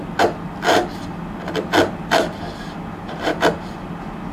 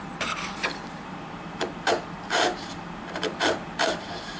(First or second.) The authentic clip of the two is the first